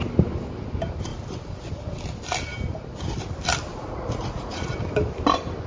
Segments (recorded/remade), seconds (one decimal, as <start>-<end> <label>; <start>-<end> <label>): 0.0-3.7 recorded; 3.7-4.7 remade; 4.7-5.7 recorded